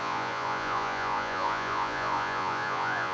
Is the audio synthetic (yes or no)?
yes